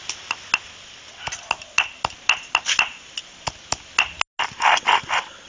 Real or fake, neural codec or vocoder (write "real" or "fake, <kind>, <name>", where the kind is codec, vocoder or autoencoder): real